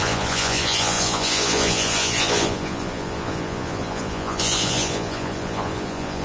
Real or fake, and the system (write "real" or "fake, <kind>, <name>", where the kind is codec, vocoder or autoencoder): fake, vocoder, Vocos